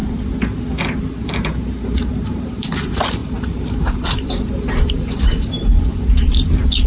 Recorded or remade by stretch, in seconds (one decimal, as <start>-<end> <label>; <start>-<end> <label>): 0.0-1.2 recorded; 1.2-6.3 remade; 6.3-6.9 recorded